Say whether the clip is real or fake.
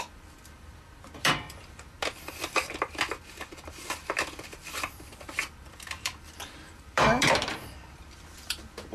fake